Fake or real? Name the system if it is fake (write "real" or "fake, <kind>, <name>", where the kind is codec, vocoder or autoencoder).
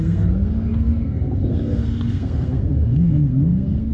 fake, codec, SNAC